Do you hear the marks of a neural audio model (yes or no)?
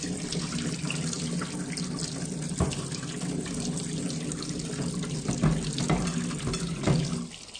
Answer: no